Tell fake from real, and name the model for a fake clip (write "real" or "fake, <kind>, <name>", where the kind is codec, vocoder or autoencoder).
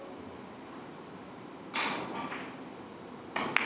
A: real